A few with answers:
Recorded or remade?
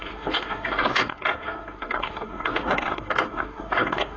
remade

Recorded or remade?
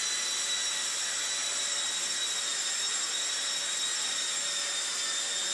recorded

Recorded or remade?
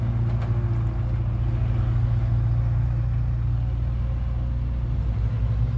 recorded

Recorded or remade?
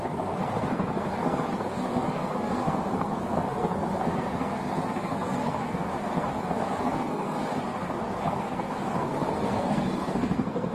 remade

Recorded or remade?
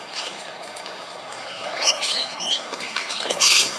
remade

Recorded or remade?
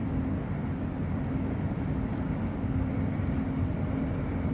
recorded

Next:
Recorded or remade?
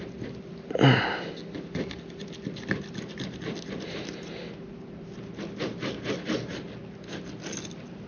recorded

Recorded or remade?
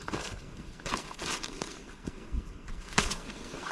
remade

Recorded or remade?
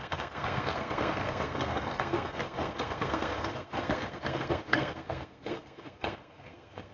remade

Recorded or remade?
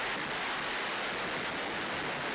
recorded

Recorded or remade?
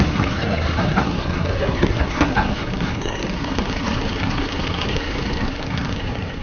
remade